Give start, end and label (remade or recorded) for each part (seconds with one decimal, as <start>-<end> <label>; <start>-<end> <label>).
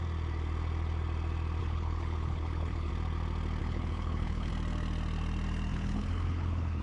0.0-1.6 recorded; 1.6-2.9 remade; 2.9-3.6 recorded; 3.6-4.5 remade; 4.5-5.7 recorded; 5.7-6.8 remade